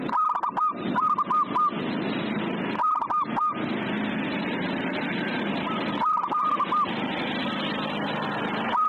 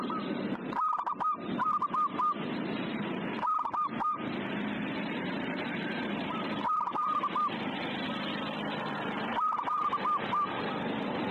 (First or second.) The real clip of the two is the first